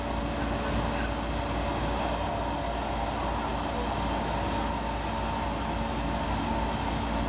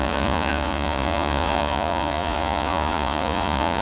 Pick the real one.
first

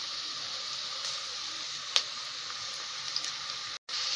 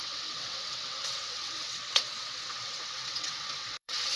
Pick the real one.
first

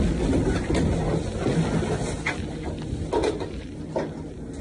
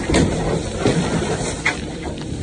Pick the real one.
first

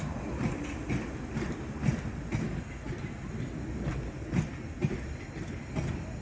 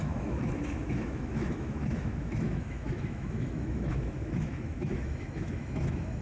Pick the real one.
first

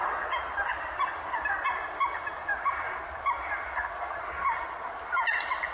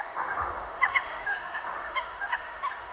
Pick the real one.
first